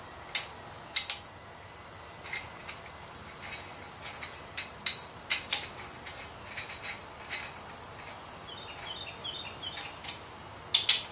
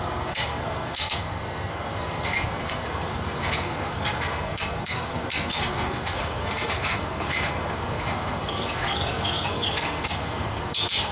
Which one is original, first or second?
first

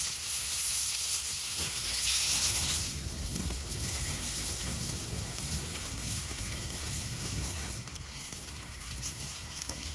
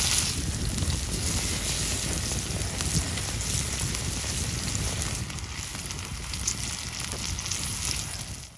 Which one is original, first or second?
second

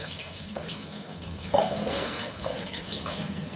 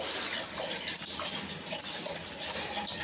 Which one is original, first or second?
second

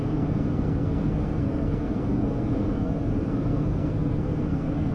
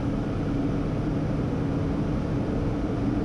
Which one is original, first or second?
second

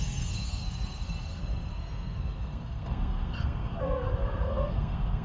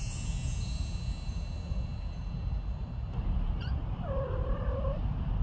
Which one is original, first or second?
second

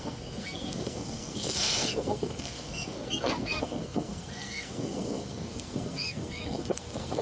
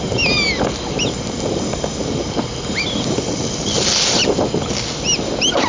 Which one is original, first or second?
second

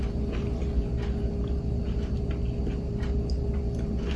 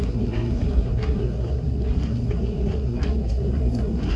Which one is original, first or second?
first